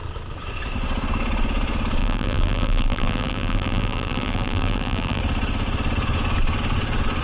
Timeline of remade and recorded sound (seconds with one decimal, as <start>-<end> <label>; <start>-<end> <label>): 0.0-2.0 recorded; 2.0-5.2 remade; 5.2-7.2 recorded